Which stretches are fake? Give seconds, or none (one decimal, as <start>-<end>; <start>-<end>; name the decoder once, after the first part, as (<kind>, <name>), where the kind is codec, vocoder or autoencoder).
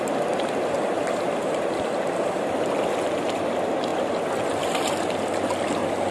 none